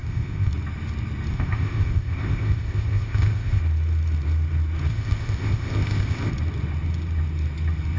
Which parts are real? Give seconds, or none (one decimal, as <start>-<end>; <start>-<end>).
0.5-1.3; 3.6-4.9; 6.3-8.0